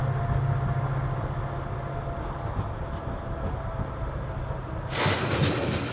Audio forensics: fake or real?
real